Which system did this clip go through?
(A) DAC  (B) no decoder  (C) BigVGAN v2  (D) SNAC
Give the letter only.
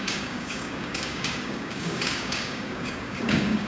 A